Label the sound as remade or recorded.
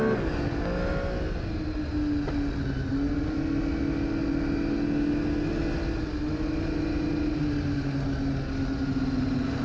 recorded